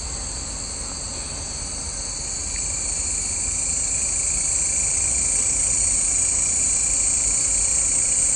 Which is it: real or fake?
real